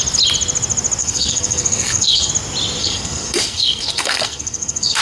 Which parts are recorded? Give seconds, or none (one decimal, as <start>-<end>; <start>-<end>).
0.0-1.0; 2.3-2.8